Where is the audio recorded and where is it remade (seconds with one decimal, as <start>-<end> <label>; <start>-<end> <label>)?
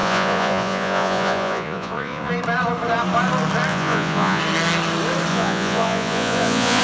0.0-2.3 remade; 2.3-3.7 recorded; 3.7-4.4 remade; 4.4-5.3 recorded; 5.3-6.8 remade